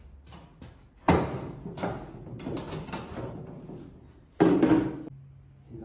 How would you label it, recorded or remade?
recorded